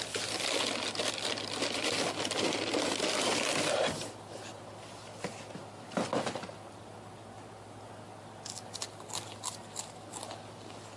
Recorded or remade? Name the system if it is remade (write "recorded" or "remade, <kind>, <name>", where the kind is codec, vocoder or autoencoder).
recorded